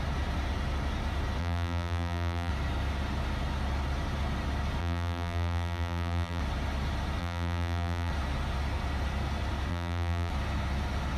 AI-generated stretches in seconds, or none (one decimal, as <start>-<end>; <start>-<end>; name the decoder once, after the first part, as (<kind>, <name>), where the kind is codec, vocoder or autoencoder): 1.4-2.5 (vocoder, BigVGAN v2); 4.8-6.4; 7.2-8.1; 9.7-10.3